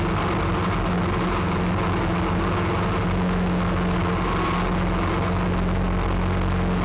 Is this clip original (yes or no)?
yes